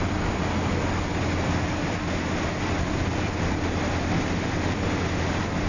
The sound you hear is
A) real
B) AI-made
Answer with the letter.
A